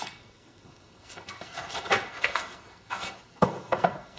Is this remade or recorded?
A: remade